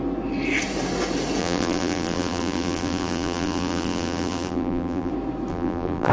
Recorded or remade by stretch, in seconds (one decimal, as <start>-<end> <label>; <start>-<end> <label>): 0.0-1.4 recorded; 1.4-5.1 remade; 5.1-5.5 recorded; 5.5-6.1 remade